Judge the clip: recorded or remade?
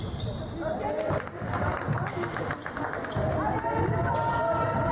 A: recorded